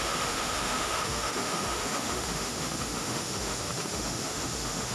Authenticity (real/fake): fake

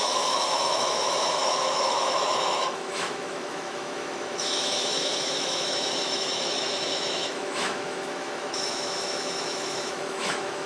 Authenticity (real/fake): fake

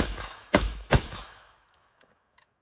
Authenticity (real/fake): fake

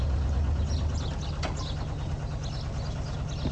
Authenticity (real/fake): real